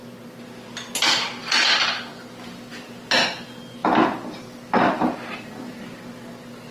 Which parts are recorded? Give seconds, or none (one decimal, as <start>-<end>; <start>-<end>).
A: 0.0-1.4; 2.1-3.8; 6.0-6.7